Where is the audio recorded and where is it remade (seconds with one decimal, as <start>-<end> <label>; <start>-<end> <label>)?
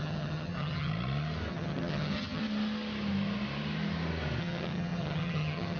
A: 0.0-0.9 remade; 0.9-1.5 recorded; 1.5-2.4 remade; 2.4-4.4 recorded; 4.4-5.8 remade